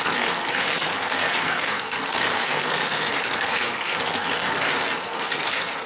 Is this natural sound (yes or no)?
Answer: no